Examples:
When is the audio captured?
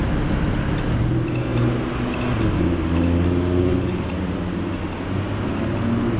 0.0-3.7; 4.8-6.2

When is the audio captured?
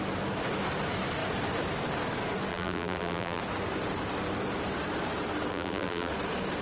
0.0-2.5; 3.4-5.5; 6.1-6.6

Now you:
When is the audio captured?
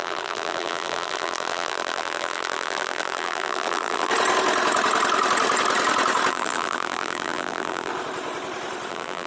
4.1-6.3; 7.9-8.9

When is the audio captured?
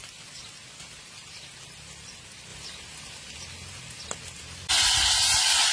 0.0-5.7